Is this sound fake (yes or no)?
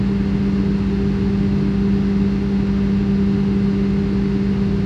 no